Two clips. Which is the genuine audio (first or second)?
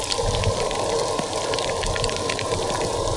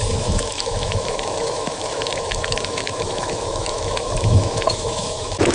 first